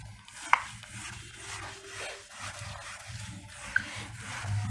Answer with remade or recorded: recorded